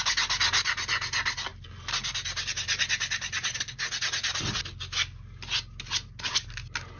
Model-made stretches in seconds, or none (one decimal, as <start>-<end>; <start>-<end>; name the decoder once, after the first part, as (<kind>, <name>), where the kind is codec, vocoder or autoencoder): none